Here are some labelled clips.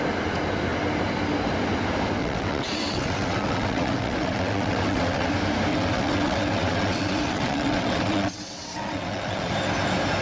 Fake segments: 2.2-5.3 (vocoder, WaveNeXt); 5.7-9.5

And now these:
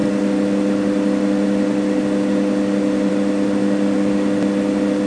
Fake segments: none

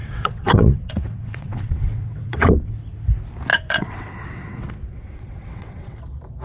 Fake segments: 0.0-2.7 (vocoder, WaveNeXt); 3.5-6.0

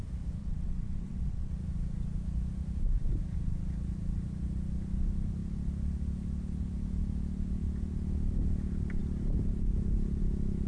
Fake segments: 0.4-1.5 (vocoder, WaveNeXt)